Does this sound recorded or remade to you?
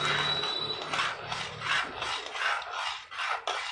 recorded